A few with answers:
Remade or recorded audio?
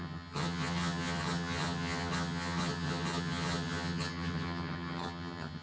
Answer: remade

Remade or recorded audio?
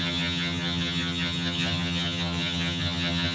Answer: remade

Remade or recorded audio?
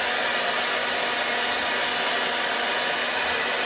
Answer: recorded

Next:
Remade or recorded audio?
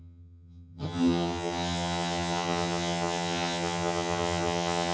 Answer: remade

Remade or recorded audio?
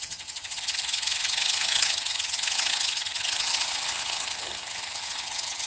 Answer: remade